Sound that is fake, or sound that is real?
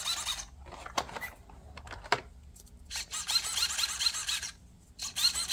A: real